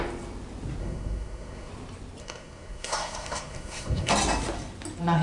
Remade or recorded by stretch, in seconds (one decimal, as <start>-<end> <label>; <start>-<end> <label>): 0.0-0.8 recorded; 0.8-1.7 remade; 1.7-2.2 recorded; 2.2-4.1 remade; 4.1-5.2 recorded